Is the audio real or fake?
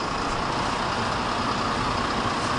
real